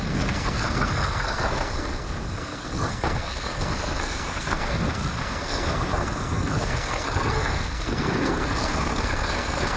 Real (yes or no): no